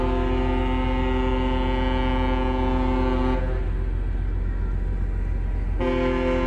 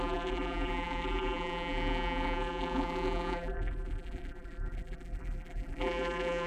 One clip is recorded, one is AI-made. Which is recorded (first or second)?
first